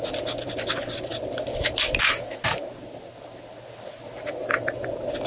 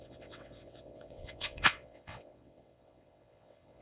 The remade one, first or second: second